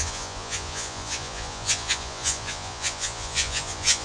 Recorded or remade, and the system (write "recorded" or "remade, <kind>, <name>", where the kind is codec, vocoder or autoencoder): remade, vocoder, Vocos